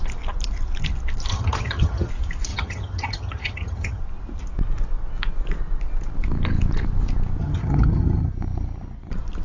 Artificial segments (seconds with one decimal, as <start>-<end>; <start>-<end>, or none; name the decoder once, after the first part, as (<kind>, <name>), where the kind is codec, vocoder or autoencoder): 1.3-2.1 (vocoder, HiFi-GAN); 2.5-4.0; 7.4-8.3